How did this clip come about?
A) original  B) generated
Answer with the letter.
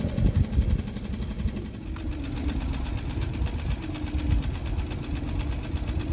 A